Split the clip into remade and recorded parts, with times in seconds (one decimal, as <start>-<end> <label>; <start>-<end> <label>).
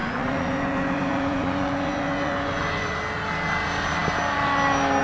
0.0-3.0 remade; 3.0-5.0 recorded